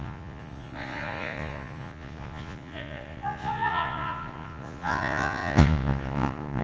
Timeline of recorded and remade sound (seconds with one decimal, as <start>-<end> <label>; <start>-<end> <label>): 0.0-6.6 remade